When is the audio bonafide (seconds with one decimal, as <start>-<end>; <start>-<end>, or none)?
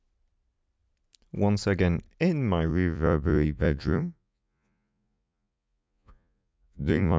0.0-2.7